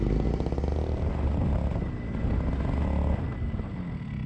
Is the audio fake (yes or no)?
no